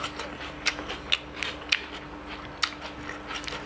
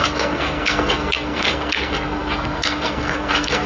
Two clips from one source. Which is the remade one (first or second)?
second